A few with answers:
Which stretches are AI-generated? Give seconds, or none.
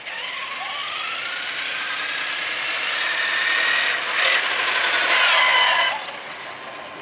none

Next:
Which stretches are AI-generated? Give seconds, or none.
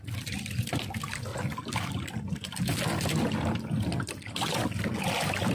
1.3-4.6 (vocoder, BigVGAN v2)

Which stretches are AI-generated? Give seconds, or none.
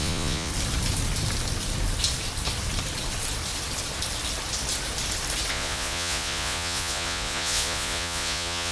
0.0-0.5 (vocoder, Vocos); 5.5-8.7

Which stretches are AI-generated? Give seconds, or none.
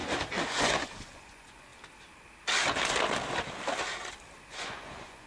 0.5-1.7 (vocoder, Vocos); 4.4-5.3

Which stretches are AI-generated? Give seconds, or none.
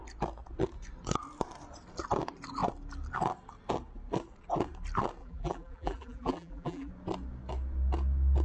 5.2-6.9 (vocoder, BigVGAN v2)